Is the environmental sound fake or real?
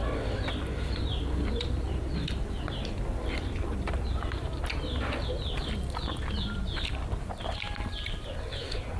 fake